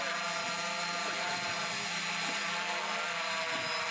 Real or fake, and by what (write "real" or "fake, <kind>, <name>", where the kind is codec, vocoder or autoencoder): real